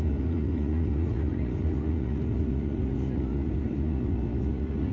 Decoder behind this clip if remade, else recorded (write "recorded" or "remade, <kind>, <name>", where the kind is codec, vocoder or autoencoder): remade, vocoder, Vocos